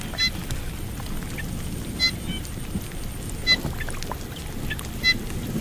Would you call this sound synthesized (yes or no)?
no